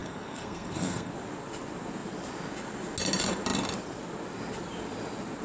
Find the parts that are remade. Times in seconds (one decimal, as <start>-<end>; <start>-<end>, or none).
0.0-1.1